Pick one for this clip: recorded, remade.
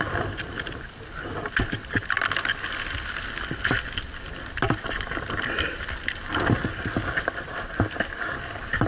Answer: recorded